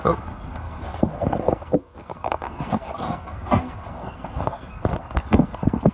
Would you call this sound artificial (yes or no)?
yes